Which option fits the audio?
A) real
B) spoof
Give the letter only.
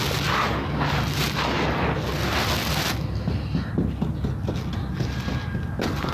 A